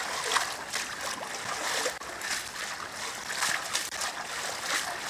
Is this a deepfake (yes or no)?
no